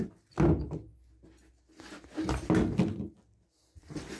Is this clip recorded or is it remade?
recorded